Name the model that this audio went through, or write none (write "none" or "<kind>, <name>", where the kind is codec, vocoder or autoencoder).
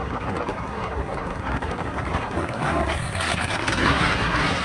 codec, SNAC